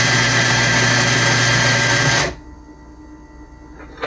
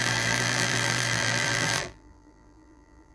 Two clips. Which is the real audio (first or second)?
first